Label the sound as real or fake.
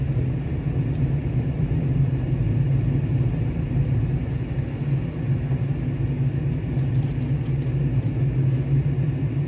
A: real